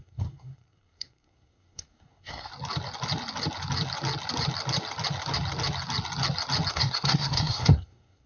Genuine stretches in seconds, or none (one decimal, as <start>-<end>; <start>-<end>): 2.5-6.7